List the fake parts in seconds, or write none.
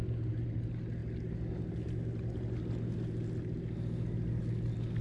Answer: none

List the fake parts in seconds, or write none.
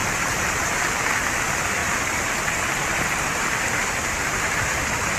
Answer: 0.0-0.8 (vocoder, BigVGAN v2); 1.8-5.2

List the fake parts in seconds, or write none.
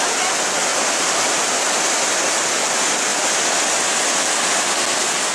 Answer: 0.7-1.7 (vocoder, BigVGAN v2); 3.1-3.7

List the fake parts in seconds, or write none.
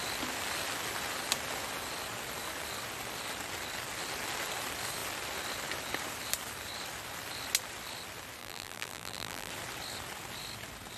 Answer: 8.4-9.5 (vocoder, BigVGAN v2)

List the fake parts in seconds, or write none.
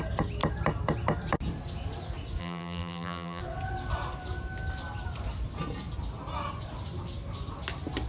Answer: 2.4-3.4 (vocoder, BigVGAN v2)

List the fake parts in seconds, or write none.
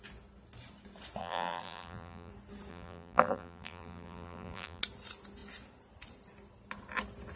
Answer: 1.2-2.3 (vocoder, BigVGAN v2); 2.7-4.8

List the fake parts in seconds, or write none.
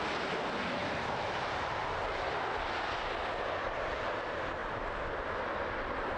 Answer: 0.8-2.0 (vocoder, BigVGAN v2); 3.6-4.1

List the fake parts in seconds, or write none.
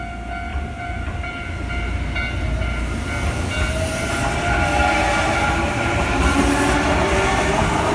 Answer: 0.5-3.1 (vocoder, BigVGAN v2); 5.0-6.2